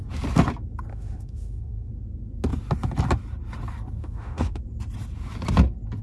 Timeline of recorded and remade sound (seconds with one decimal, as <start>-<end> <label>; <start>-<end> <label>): 0.0-0.9 recorded; 0.9-1.9 remade; 1.9-4.0 recorded; 4.0-4.6 remade; 4.6-6.0 recorded